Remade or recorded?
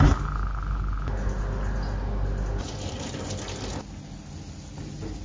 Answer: recorded